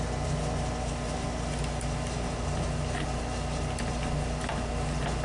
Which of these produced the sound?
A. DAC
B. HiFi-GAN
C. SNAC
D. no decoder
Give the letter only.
D